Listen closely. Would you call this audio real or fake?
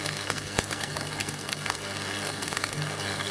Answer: fake